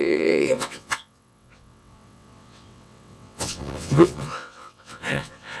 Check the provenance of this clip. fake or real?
fake